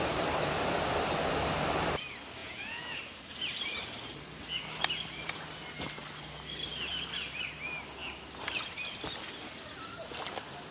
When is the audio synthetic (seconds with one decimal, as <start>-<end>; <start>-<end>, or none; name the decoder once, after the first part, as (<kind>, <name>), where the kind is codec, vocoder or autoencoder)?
2.4-3.0 (vocoder, Vocos)